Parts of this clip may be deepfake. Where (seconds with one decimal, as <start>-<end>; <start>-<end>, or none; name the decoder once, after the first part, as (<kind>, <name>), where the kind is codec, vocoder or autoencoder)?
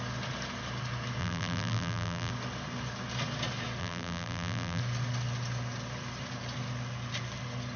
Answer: 1.2-2.3 (vocoder, BigVGAN v2); 3.8-4.8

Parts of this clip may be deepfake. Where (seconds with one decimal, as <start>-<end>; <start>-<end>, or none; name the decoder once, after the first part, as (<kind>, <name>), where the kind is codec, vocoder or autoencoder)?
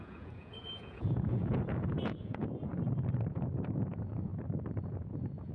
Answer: 0.0-2.7 (vocoder, Vocos); 3.3-4.3; 4.8-5.5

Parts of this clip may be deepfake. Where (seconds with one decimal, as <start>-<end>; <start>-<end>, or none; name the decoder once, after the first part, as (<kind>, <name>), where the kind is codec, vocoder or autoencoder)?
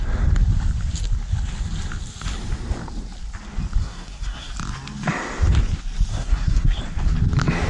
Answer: 3.8-4.5 (codec, SNAC); 6.1-6.8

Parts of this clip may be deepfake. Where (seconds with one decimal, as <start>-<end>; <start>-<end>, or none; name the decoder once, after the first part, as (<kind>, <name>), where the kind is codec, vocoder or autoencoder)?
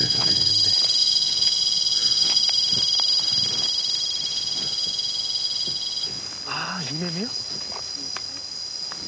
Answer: 0.0-0.5 (vocoder, Vocos); 1.0-2.4; 4.3-6.2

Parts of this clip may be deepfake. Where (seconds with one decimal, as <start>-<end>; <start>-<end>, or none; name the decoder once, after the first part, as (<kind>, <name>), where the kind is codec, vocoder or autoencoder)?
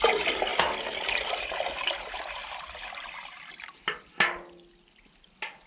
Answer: none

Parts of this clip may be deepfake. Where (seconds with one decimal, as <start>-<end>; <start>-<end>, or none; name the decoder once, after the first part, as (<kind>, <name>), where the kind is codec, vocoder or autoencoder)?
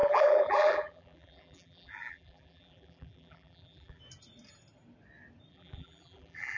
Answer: 0.0-4.0 (vocoder, BigVGAN v2); 5.5-6.6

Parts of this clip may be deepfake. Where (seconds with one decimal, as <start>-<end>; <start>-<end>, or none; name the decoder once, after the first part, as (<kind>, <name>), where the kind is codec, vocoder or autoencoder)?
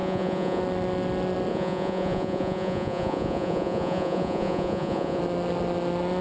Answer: 0.0-0.6 (vocoder, Vocos); 1.5-5.2